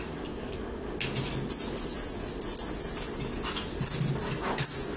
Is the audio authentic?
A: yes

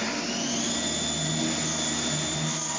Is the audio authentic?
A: yes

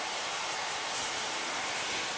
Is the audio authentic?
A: yes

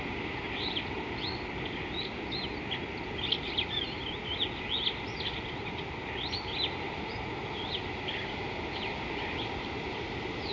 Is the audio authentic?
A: yes